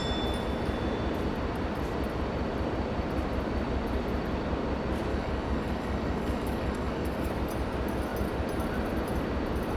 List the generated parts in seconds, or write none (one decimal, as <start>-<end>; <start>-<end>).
5.1-7.3